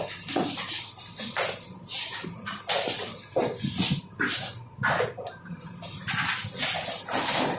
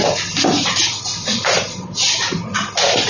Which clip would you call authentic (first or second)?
second